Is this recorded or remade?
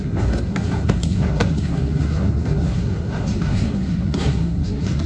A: remade